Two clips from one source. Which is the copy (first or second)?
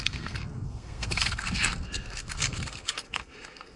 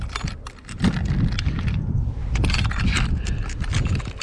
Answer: first